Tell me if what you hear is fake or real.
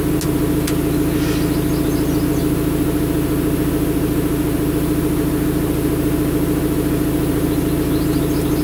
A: real